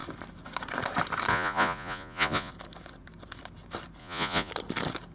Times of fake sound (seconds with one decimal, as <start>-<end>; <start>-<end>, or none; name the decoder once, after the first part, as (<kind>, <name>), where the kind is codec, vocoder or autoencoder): 1.3-2.5 (vocoder, Vocos); 4.0-4.5